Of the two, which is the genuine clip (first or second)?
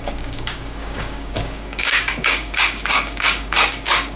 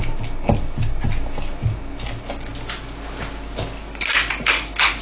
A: second